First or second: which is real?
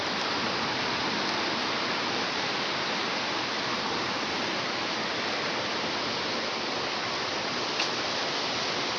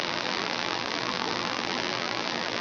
first